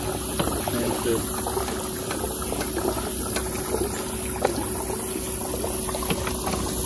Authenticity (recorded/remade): recorded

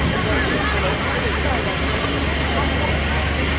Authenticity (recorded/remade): recorded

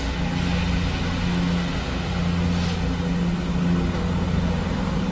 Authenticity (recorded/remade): recorded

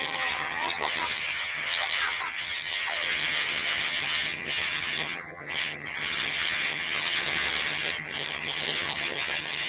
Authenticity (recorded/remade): remade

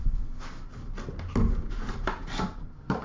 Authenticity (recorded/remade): recorded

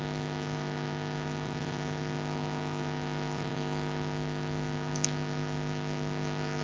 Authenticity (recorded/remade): recorded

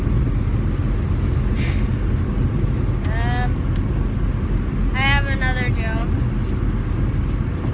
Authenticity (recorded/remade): recorded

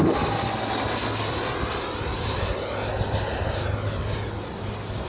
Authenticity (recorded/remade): recorded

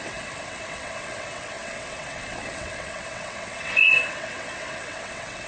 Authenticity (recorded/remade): remade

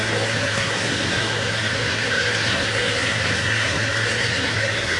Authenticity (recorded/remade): remade